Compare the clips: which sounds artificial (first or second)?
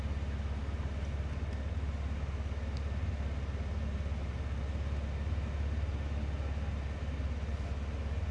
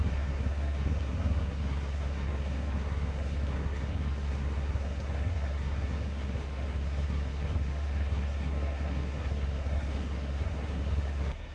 second